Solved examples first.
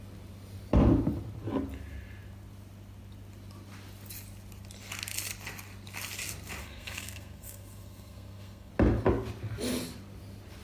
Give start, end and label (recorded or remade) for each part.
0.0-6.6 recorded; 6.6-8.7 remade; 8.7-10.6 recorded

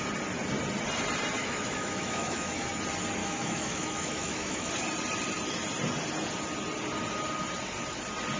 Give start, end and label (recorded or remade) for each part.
0.0-1.4 recorded; 1.4-2.7 remade; 2.7-3.2 recorded; 3.2-4.7 remade; 4.7-8.4 recorded

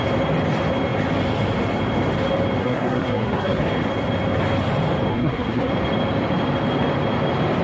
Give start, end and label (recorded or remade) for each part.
0.0-2.6 recorded; 2.6-3.6 remade; 3.6-5.1 recorded; 5.1-5.7 remade; 5.7-7.6 recorded

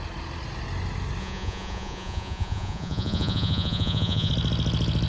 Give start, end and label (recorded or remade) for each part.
0.0-1.2 recorded; 1.2-4.3 remade; 4.3-5.1 recorded